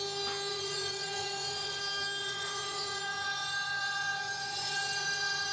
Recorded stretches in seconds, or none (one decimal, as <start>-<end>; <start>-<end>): 0.0-0.5; 1.8-2.2